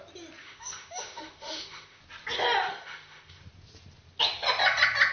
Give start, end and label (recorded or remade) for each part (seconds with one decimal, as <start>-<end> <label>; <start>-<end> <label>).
0.0-0.4 recorded; 0.4-2.0 remade; 2.0-2.7 recorded; 2.7-3.4 remade; 3.4-5.1 recorded